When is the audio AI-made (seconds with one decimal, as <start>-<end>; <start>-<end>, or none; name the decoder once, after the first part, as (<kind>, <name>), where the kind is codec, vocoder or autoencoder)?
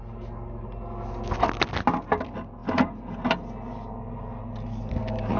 none